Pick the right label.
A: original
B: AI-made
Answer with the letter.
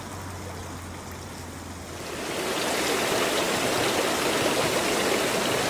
A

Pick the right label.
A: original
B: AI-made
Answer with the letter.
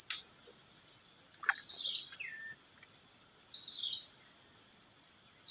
A